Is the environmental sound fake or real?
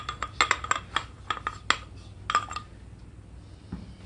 real